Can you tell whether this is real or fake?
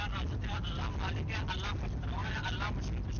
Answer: real